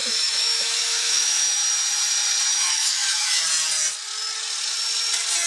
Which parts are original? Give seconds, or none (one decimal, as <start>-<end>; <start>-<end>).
1.6-2.5; 3.4-5.5